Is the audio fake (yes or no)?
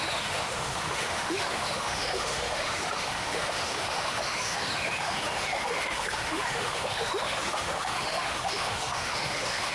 yes